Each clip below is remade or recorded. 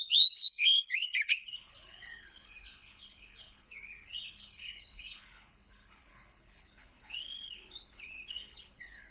remade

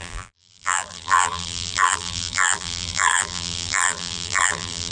remade